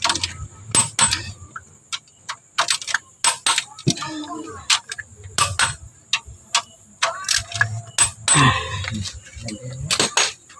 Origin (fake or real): real